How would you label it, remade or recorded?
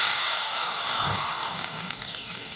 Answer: remade